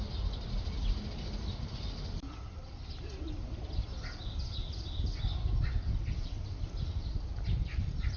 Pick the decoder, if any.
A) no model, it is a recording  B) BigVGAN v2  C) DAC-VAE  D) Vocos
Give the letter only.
A